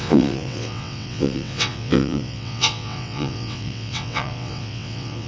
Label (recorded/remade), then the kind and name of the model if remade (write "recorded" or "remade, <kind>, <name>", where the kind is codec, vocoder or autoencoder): remade, vocoder, WaveNeXt